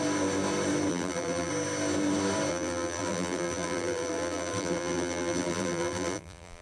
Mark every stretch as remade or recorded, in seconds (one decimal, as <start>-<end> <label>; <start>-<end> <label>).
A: 0.0-0.9 recorded; 0.9-1.5 remade; 1.5-2.5 recorded; 2.5-6.6 remade